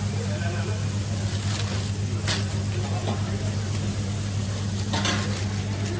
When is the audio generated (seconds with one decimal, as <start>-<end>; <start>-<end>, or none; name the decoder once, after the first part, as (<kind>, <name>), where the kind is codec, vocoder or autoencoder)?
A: none